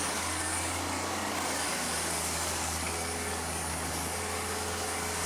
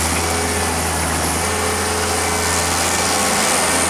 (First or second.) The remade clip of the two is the first